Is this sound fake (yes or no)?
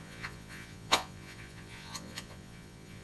yes